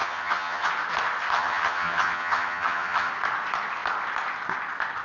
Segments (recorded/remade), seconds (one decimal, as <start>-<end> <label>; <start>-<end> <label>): 0.0-0.7 remade; 0.7-1.3 recorded; 1.3-3.1 remade; 3.1-5.0 recorded